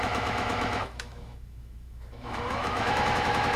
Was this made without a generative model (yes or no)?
no